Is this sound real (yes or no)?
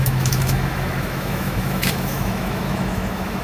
no